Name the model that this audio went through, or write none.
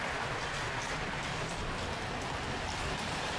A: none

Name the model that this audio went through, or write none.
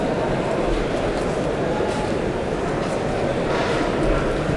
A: none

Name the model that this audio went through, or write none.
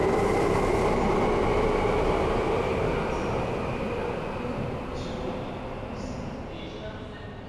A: none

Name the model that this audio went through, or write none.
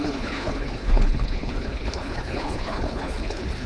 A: codec, HILCodec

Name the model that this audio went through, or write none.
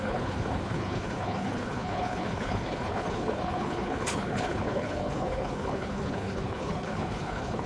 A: codec, HILCodec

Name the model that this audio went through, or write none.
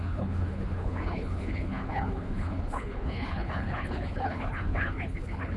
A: codec, HILCodec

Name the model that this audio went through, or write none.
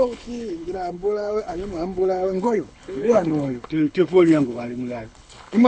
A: codec, HILCodec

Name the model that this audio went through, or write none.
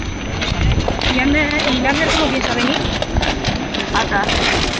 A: none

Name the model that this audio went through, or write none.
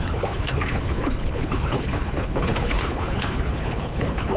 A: codec, HILCodec